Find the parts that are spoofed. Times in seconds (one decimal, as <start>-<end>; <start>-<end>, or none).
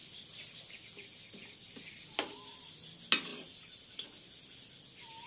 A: 3.3-3.8